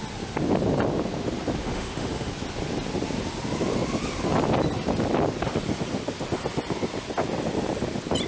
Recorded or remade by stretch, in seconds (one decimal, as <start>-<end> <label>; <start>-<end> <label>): 0.0-1.6 recorded; 1.6-2.3 remade; 2.3-8.3 recorded